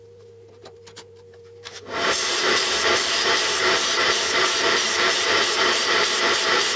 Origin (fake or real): fake